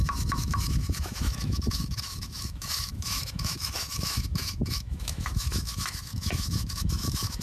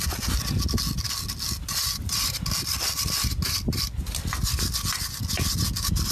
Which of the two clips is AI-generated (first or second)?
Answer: first